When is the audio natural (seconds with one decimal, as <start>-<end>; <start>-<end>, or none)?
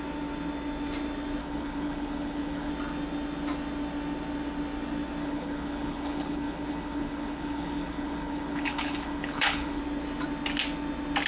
0.0-1.4; 2.7-5.2; 9.8-11.3